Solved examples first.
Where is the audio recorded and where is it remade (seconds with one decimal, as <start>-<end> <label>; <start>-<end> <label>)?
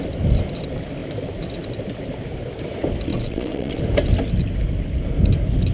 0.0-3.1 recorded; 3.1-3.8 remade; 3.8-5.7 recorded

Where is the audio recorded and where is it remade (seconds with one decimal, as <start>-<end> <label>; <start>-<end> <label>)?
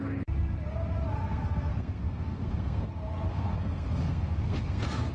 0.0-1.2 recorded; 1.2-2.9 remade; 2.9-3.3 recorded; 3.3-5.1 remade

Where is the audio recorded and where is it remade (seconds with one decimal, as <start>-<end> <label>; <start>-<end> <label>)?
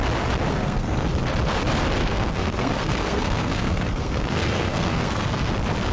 0.0-0.5 recorded; 0.5-1.1 remade; 1.1-2.0 recorded; 2.0-5.5 remade; 5.5-5.9 recorded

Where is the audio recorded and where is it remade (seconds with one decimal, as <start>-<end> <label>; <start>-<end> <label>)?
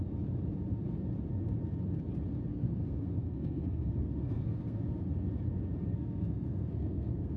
0.0-2.5 recorded; 2.5-5.0 remade; 5.0-5.9 recorded; 5.9-7.4 remade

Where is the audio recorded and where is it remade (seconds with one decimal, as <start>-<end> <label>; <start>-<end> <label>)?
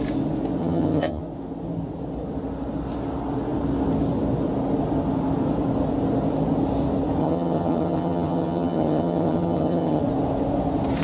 0.0-0.6 recorded; 0.6-1.2 remade; 1.2-7.2 recorded; 7.2-10.0 remade; 10.0-11.0 recorded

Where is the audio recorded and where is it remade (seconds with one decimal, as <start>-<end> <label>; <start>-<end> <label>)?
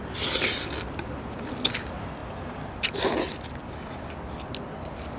0.0-5.2 recorded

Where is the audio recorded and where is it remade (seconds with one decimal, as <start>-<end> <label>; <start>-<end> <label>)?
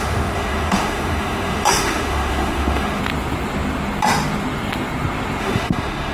0.0-3.0 remade; 3.0-5.4 recorded; 5.4-6.1 remade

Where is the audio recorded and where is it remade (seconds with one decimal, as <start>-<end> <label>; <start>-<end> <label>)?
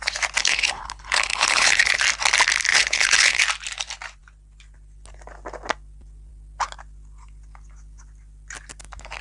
0.0-0.4 recorded; 0.4-2.0 remade; 2.0-2.7 recorded; 2.7-3.4 remade; 3.4-9.2 recorded